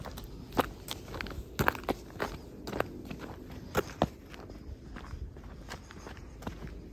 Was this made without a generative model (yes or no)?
yes